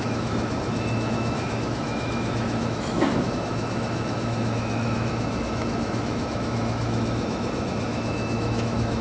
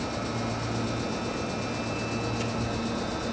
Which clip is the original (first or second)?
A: second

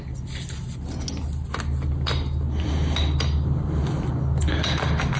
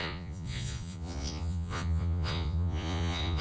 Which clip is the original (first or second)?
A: first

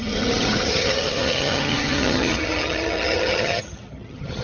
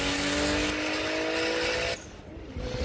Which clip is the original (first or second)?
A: second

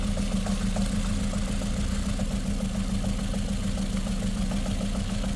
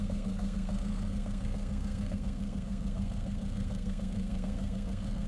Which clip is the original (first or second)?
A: first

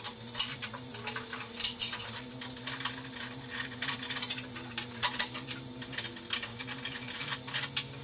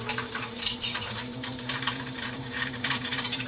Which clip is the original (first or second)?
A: first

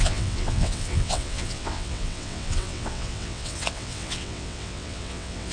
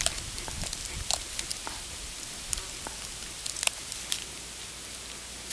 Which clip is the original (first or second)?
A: second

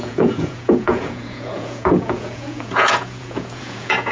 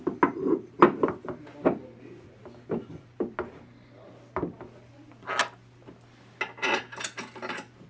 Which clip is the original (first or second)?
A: second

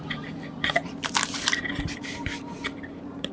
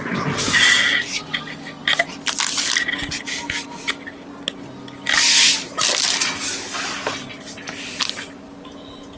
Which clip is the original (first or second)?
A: second